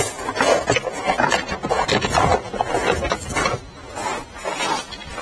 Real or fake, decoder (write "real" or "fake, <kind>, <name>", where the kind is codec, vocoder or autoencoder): real